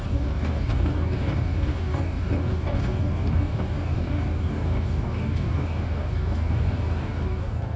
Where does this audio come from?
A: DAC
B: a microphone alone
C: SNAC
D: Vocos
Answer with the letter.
A